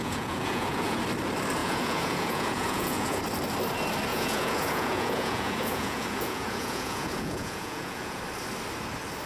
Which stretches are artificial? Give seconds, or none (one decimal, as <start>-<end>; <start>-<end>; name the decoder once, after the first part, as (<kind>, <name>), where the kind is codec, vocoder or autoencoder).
0.0-1.0 (vocoder, Vocos); 1.6-3.2; 4.1-8.2